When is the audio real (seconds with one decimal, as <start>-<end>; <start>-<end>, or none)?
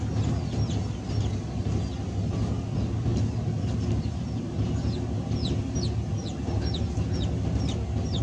0.0-3.1; 4.4-8.2